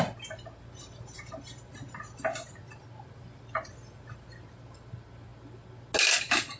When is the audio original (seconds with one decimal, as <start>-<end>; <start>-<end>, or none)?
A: 0.0-6.6